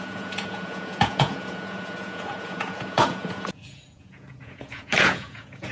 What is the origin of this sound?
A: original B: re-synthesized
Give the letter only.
B